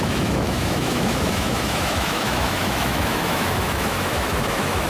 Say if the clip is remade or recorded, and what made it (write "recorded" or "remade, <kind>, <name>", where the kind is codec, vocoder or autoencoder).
remade, autoencoder, DAC-VAE